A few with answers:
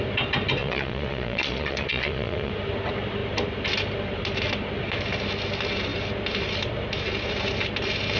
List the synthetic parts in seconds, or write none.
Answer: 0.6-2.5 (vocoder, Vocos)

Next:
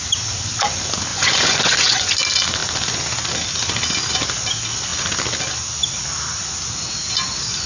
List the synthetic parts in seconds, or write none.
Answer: 1.1-2.1 (vocoder, Vocos)

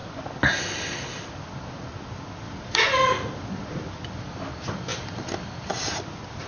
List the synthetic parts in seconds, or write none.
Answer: none

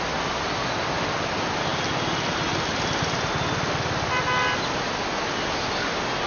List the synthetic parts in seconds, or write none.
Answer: none